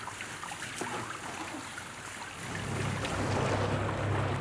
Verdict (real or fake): real